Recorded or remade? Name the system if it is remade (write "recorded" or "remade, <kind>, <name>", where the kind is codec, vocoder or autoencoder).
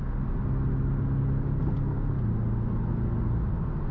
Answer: recorded